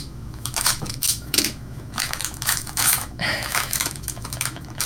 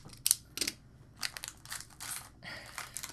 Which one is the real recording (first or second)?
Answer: second